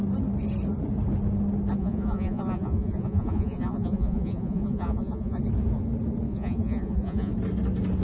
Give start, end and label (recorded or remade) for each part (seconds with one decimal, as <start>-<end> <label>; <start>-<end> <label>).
0.0-1.8 recorded; 1.8-5.4 remade; 5.4-6.3 recorded; 6.3-7.3 remade; 7.3-8.0 recorded